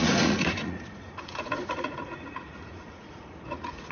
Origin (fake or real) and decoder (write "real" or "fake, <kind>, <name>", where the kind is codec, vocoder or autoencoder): fake, vocoder, Vocos